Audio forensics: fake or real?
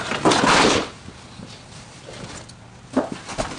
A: real